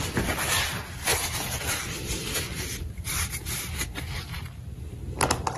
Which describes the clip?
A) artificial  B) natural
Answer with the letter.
B